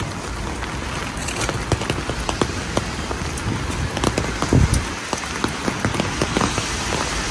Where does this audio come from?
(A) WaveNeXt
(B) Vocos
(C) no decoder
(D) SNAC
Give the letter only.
C